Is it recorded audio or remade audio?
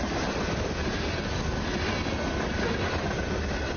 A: recorded